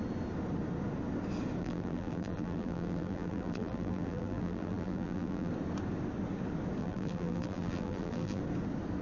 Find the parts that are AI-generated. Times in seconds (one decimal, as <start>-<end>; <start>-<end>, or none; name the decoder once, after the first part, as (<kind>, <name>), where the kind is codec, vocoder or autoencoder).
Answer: 1.6-5.5 (vocoder, BigVGAN v2); 6.8-8.4